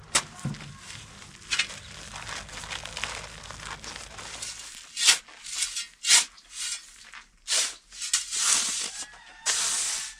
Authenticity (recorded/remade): recorded